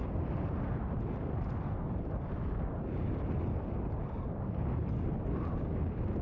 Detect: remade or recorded recorded